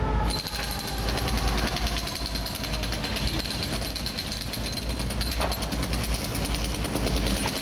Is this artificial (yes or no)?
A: no